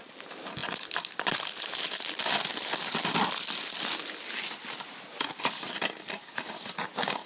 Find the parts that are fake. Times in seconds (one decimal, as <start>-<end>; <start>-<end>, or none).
none